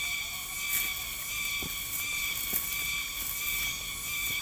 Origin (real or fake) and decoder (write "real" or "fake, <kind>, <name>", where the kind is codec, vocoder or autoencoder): real